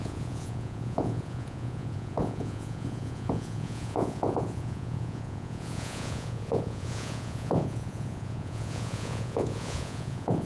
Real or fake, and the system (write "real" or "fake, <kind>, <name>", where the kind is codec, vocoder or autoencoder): fake, vocoder, Vocos